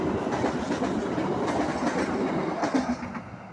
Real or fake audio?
real